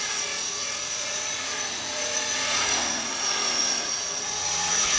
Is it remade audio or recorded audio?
remade